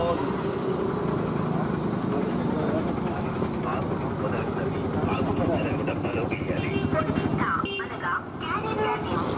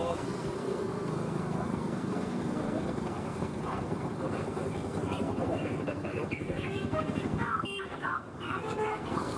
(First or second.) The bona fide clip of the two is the first